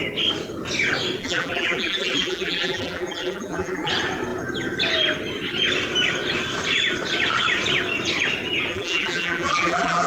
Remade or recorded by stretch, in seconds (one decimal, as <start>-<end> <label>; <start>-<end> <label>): 0.0-1.2 recorded; 1.2-3.9 remade; 3.9-8.7 recorded; 8.7-10.1 remade